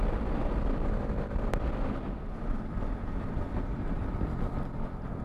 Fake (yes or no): no